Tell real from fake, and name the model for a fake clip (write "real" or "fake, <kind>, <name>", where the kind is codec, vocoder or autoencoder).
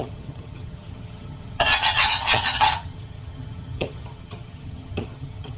fake, vocoder, HiFi-GAN